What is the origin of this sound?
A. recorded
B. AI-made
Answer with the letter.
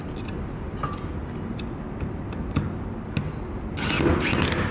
A